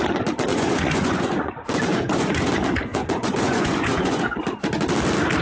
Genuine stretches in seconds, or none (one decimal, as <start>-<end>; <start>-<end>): 0.0-0.5; 1.5-1.9; 2.5-2.9; 4.4-5.4